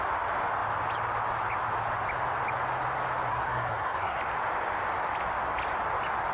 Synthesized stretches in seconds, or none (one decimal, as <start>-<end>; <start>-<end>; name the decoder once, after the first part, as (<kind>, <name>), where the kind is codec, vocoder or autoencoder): 3.3-4.2 (codec, SNAC)